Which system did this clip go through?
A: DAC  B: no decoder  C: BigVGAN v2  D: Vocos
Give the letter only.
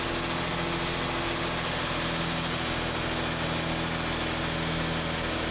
B